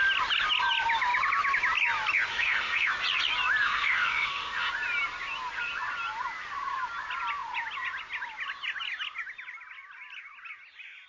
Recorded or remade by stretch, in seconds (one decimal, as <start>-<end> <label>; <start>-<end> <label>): 0.0-2.3 recorded; 2.3-2.9 remade; 2.9-3.6 recorded; 3.6-4.7 remade; 4.7-11.1 recorded